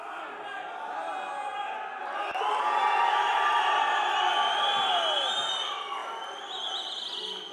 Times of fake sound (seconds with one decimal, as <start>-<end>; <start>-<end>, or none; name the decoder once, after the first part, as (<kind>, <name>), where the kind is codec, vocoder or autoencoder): none